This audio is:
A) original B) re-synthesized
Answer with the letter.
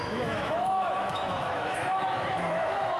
B